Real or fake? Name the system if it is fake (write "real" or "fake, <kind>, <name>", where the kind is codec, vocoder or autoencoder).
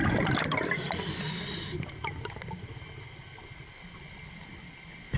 real